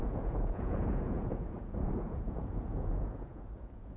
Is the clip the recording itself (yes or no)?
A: no